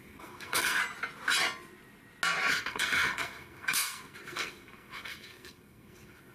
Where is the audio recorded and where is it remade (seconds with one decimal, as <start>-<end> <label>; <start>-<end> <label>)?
0.0-0.8 remade; 0.8-2.5 recorded; 2.5-6.3 remade